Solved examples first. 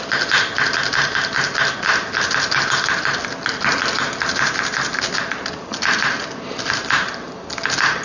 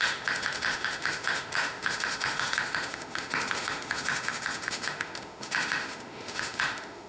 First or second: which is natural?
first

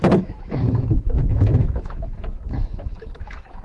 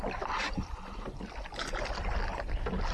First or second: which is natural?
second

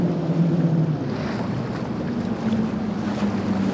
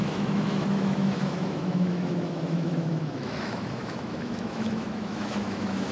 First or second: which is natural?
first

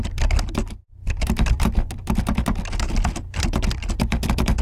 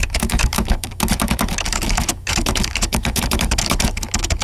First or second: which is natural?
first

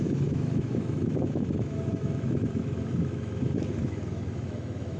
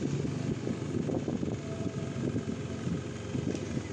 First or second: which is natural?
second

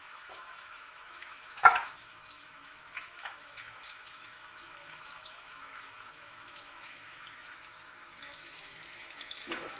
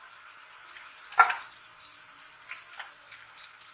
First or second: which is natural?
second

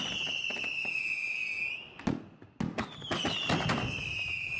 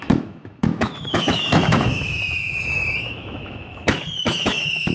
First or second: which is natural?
first